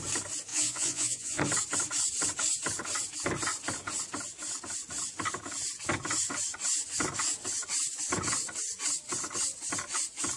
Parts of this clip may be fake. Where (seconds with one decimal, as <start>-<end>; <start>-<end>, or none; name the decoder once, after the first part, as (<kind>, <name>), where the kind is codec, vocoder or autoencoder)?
0.5-1.4 (vocoder, Vocos)